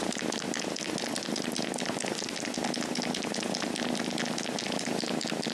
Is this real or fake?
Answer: real